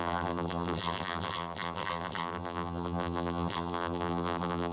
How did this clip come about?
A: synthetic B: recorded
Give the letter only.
A